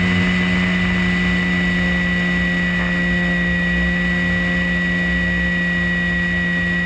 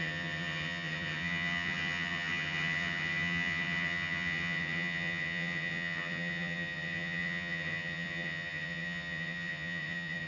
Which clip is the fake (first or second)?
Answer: second